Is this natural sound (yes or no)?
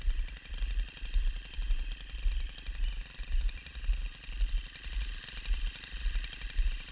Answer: yes